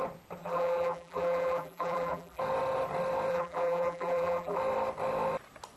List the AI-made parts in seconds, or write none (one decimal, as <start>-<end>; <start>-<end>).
0.4-2.4; 3.3-4.6